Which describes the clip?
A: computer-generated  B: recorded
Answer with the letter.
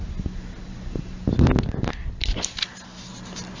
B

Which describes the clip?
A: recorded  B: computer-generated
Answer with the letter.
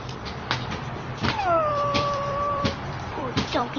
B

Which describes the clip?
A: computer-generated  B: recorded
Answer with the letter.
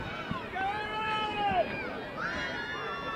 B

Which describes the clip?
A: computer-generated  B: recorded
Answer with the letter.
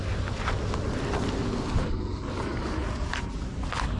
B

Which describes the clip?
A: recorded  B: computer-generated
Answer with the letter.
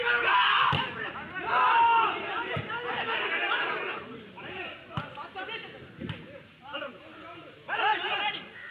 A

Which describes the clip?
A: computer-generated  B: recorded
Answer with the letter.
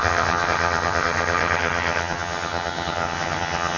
A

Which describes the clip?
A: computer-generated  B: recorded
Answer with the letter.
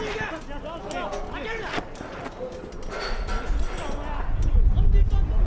B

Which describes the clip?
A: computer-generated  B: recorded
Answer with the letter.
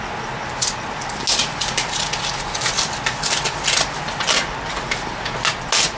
B